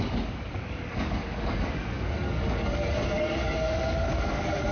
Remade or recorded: remade